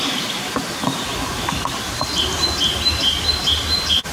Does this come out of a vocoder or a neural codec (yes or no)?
no